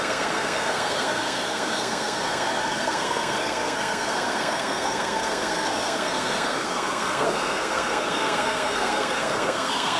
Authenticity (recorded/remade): remade